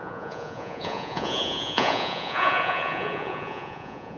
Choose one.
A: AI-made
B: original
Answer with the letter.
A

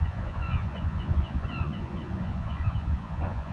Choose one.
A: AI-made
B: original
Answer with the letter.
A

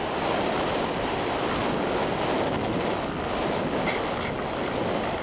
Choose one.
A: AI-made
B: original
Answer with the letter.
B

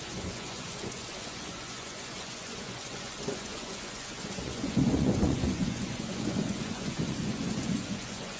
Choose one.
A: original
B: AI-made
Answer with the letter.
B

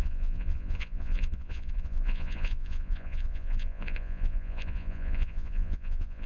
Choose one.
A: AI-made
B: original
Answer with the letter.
A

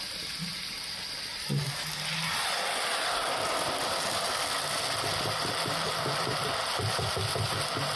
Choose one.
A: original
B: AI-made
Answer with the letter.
A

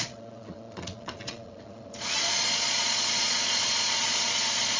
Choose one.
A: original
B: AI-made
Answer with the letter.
B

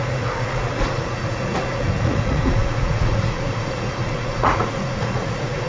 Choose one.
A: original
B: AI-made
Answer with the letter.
B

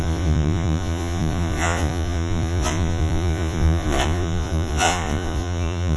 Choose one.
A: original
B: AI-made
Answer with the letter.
B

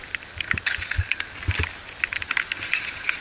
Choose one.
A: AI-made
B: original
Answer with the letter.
B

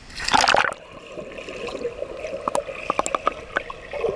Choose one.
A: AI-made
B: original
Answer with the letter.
B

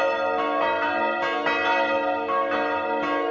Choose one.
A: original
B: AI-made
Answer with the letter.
A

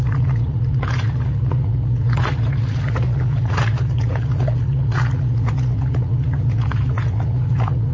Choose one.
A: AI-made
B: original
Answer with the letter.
A